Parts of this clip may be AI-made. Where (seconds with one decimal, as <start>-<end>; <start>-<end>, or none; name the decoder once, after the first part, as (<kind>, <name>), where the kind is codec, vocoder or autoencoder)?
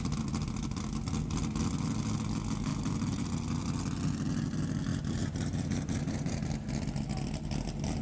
2.7-3.2 (vocoder, BigVGAN v2); 4.9-6.4